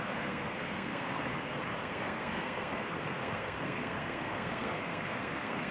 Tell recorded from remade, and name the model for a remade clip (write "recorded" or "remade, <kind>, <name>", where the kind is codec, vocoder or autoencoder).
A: remade, codec, SNAC